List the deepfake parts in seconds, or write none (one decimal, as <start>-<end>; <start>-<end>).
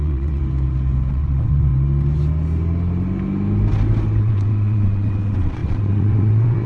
0.0-0.4; 1.1-1.7; 4.2-6.7